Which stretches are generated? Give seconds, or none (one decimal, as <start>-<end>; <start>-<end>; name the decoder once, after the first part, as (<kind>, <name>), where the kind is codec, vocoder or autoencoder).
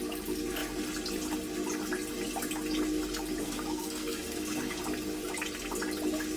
3.4-4.8 (codec, SNAC)